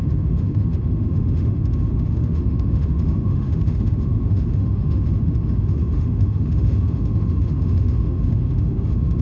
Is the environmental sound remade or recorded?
remade